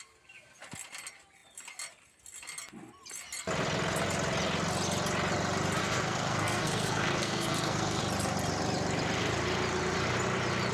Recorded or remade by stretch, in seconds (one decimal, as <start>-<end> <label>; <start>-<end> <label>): 0.0-5.8 recorded; 5.8-8.0 remade; 8.0-10.7 recorded